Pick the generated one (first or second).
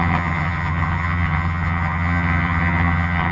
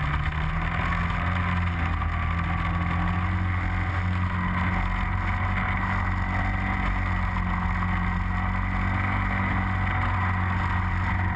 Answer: first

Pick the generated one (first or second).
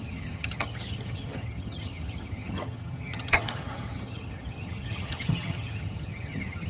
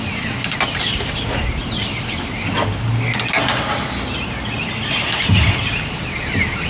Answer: first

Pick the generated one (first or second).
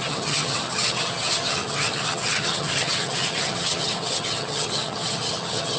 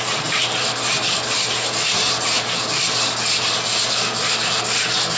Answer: first